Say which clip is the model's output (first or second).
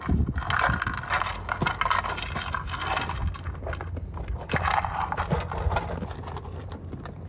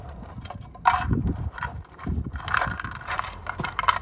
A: second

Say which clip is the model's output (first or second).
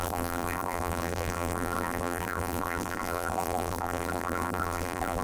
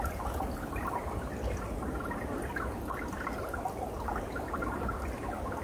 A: first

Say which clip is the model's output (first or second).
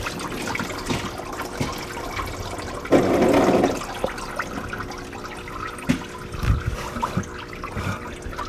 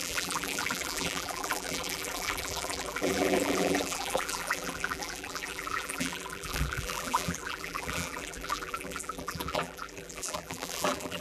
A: second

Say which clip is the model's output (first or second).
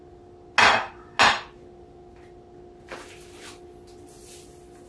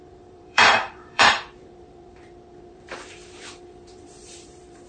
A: second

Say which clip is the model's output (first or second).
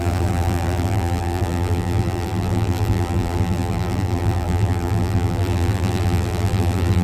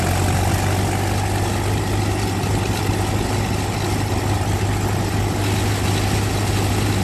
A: first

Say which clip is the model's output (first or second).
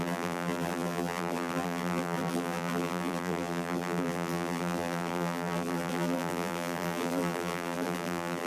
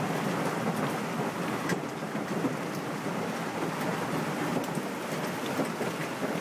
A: first